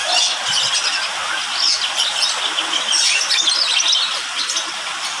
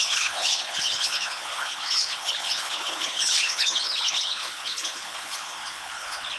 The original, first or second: first